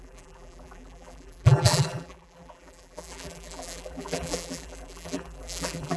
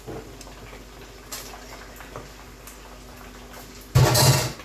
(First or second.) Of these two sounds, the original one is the second